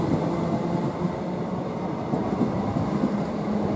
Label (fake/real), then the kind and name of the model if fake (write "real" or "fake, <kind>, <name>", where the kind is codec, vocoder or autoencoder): real